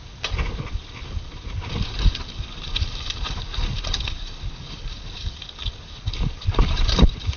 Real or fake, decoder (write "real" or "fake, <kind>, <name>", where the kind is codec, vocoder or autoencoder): real